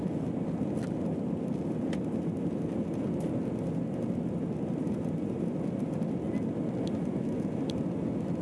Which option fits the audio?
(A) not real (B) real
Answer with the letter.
B